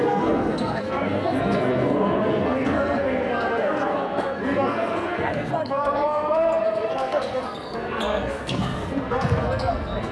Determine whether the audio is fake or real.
fake